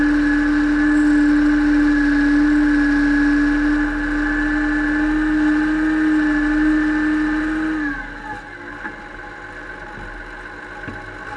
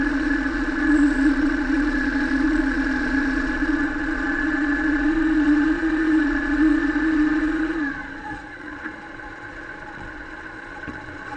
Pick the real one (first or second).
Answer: first